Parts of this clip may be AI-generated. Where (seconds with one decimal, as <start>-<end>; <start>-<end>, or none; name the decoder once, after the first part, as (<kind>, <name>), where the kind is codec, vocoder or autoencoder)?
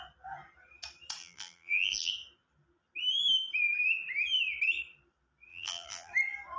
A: 1.2-2.1 (vocoder, BigVGAN v2); 5.5-6.1